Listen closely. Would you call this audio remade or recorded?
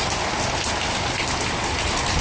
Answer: recorded